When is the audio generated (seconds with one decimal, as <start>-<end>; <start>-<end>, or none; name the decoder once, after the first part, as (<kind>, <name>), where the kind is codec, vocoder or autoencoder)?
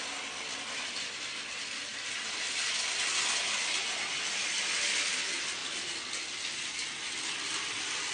none